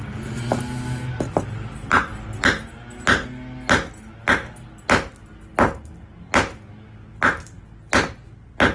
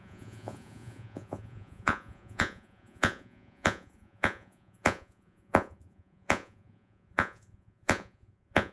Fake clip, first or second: second